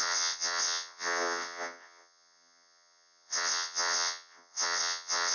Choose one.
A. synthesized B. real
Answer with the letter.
A